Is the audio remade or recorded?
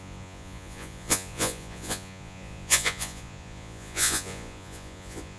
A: remade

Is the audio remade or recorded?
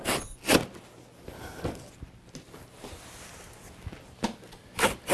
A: recorded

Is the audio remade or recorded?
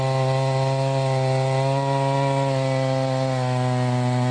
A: recorded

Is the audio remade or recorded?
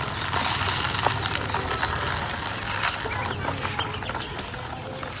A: recorded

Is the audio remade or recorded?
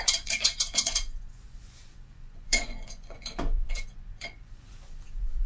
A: remade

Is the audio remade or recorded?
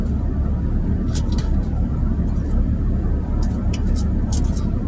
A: recorded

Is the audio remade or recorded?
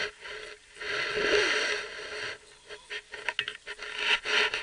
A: recorded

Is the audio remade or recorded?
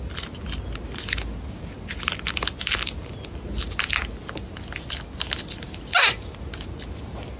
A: recorded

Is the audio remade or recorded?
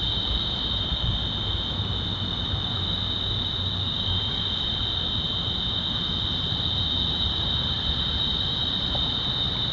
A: remade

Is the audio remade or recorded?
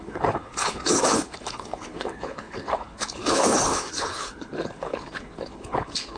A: remade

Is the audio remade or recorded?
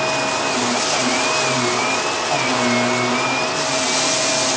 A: recorded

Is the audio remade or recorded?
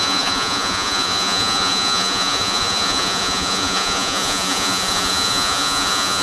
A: remade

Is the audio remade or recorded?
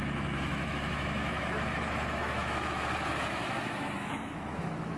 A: remade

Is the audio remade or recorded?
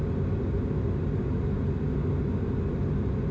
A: recorded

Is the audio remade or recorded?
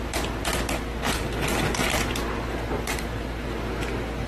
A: remade